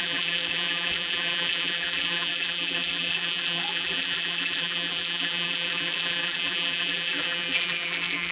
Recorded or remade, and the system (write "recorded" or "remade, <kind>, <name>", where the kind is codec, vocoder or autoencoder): remade, vocoder, BigVGAN v2